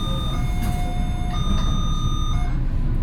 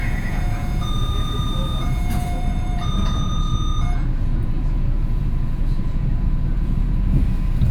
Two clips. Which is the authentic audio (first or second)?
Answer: first